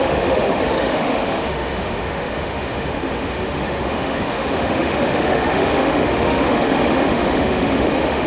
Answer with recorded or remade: remade